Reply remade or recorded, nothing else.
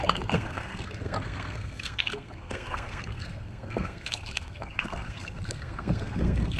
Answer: remade